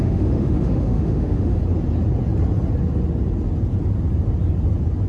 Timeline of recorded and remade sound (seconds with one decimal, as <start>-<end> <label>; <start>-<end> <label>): 0.0-1.6 remade; 1.6-5.1 recorded